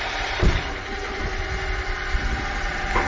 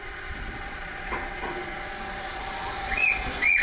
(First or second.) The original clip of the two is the first